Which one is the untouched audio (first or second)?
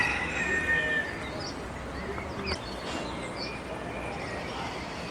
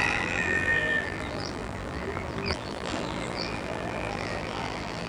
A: first